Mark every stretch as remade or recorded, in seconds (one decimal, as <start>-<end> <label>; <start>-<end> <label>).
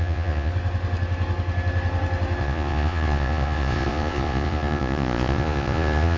0.0-0.5 remade; 0.5-2.4 recorded; 2.4-6.2 remade